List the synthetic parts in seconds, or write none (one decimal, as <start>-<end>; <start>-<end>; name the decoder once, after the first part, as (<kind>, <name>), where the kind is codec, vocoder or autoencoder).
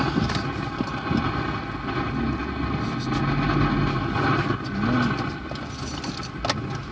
none